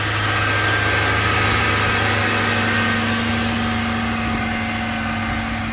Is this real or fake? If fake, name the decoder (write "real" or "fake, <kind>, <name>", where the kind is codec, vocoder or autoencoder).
real